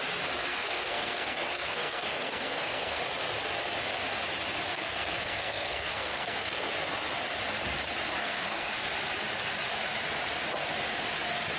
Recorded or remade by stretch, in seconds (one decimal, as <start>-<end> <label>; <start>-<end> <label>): 0.0-0.4 recorded; 0.4-3.0 remade; 3.0-4.7 recorded; 4.7-6.7 remade; 6.7-8.2 recorded; 8.2-8.7 remade; 8.7-11.6 recorded

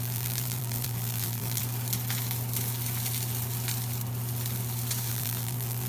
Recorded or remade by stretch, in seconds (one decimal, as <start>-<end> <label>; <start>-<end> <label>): 0.0-1.6 remade; 1.6-5.1 recorded; 5.1-5.9 remade

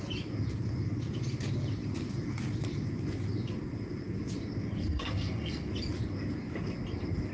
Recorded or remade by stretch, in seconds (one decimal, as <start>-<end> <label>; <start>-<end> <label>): 0.0-4.8 recorded; 4.8-5.7 remade; 5.7-7.3 recorded